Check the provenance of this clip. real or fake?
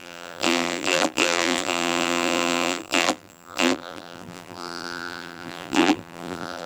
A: fake